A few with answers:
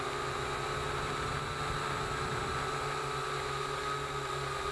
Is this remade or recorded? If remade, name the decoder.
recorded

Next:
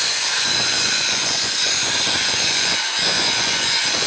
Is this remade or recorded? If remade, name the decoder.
remade, vocoder, Vocos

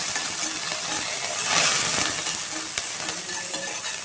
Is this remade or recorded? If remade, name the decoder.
recorded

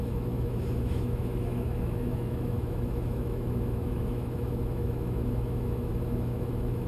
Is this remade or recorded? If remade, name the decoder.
remade, autoencoder, DAC-VAE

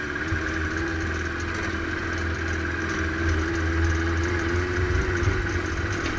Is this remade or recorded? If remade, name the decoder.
recorded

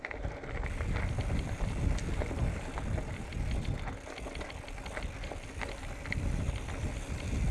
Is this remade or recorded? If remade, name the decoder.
recorded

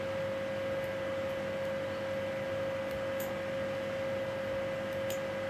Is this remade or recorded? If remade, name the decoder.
recorded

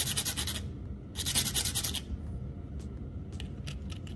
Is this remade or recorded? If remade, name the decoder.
recorded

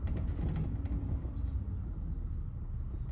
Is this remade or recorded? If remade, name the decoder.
recorded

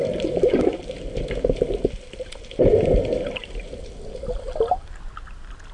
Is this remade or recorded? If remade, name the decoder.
recorded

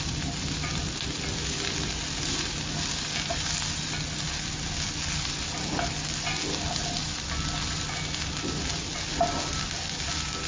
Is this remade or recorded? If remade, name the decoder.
recorded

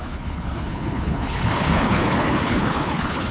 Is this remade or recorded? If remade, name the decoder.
remade, codec, HILCodec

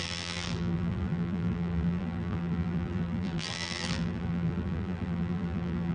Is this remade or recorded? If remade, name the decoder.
remade, vocoder, BigVGAN v2